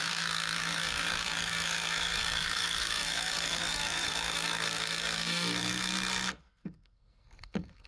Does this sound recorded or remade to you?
remade